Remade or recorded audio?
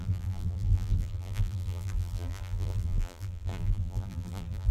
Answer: remade